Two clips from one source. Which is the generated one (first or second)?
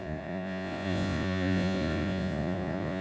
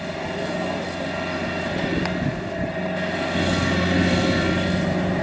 first